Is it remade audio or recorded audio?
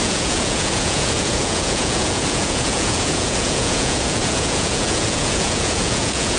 remade